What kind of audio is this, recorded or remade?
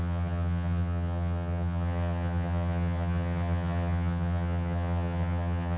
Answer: remade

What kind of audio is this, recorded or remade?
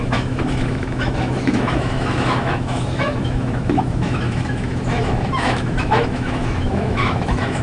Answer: remade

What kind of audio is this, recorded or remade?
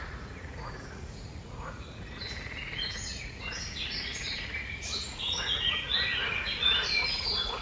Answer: remade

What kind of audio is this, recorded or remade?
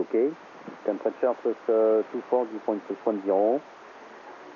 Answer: recorded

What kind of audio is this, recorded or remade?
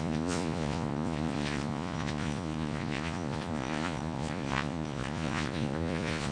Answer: remade